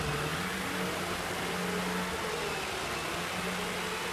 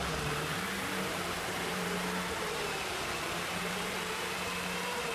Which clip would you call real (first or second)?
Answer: first